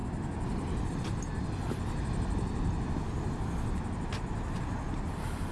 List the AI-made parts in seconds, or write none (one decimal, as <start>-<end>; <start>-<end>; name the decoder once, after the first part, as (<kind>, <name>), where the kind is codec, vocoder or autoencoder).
none